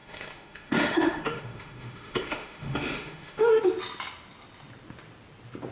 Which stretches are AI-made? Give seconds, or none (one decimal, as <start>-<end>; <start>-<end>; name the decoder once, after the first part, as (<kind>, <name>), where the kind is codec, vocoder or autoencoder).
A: 0.0-3.4 (autoencoder, DAC-VAE)